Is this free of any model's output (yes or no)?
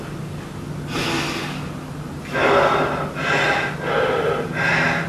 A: yes